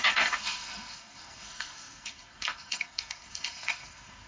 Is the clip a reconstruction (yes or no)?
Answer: yes